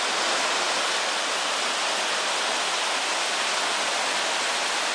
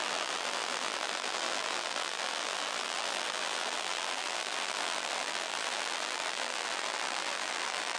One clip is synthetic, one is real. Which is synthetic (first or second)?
second